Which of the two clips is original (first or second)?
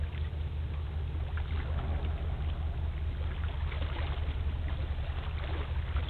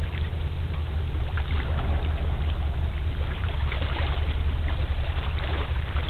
first